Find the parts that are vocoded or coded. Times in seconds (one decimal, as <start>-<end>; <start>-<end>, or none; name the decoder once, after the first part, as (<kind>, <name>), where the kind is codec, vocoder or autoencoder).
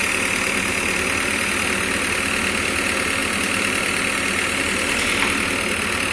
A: none